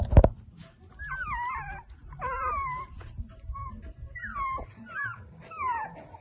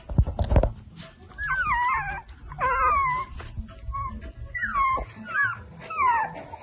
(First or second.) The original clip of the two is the second